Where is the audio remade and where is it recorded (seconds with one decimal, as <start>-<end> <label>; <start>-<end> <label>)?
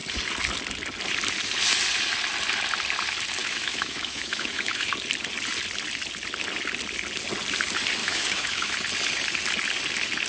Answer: 0.0-3.4 recorded; 3.4-4.9 remade; 4.9-8.0 recorded; 8.0-8.7 remade; 8.7-10.3 recorded